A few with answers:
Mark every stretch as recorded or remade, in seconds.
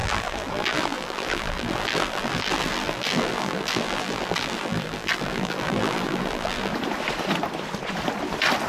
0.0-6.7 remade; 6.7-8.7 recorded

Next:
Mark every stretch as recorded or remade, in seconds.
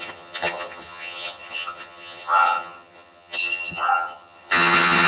0.0-5.1 remade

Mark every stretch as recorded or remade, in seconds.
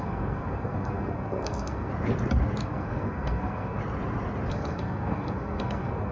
0.0-1.9 remade; 1.9-2.6 recorded; 2.6-3.8 remade; 3.8-4.5 recorded; 4.5-6.1 remade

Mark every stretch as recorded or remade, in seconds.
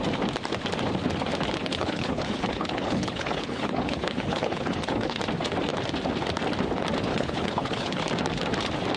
0.0-1.6 recorded; 1.6-5.2 remade; 5.2-7.1 recorded; 7.1-8.0 remade; 8.0-9.0 recorded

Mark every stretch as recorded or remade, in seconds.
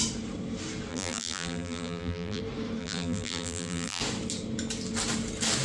0.0-0.9 recorded; 0.9-2.4 remade; 2.4-2.8 recorded; 2.8-4.0 remade; 4.0-5.6 recorded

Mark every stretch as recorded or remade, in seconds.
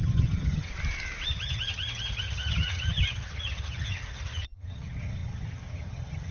0.0-0.7 remade; 0.7-1.3 recorded; 1.3-6.3 remade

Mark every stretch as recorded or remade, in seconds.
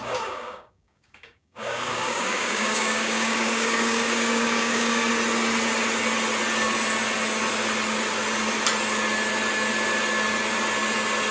0.0-5.1 remade; 5.1-11.3 recorded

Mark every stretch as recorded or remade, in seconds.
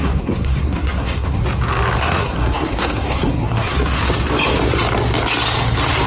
0.0-1.4 remade; 1.4-2.0 recorded; 2.0-4.0 remade; 4.0-6.1 recorded